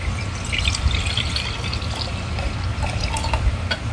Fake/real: real